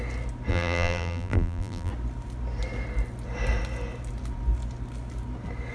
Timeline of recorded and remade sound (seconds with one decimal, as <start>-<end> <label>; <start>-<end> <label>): 0.0-0.5 recorded; 0.5-1.9 remade; 1.9-5.7 recorded